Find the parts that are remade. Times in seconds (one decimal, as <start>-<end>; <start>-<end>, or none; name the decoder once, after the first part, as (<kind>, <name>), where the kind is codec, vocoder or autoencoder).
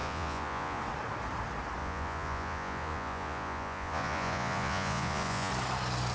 0.0-0.8 (vocoder, Vocos); 1.8-5.5